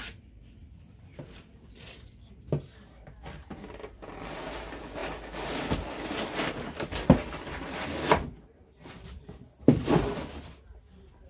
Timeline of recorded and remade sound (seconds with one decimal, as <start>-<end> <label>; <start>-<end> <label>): 0.0-0.6 recorded; 0.6-1.5 remade; 1.5-11.3 recorded